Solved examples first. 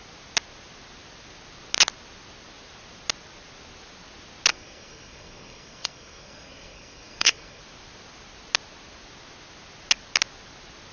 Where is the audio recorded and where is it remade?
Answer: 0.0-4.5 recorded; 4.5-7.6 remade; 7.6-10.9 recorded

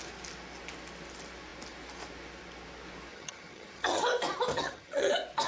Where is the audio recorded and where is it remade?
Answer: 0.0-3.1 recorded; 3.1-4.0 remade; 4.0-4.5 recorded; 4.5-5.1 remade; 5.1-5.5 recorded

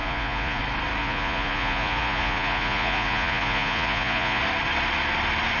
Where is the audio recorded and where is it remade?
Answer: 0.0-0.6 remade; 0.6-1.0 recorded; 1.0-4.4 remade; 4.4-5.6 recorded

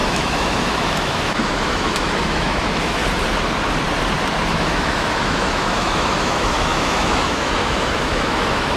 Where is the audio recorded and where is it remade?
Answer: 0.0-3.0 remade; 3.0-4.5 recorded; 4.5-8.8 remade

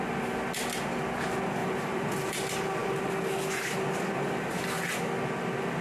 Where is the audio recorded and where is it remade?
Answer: 0.0-1.6 recorded; 1.6-2.1 remade; 2.1-5.8 recorded